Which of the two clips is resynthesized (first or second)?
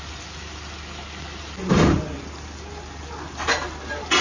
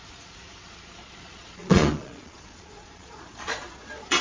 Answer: second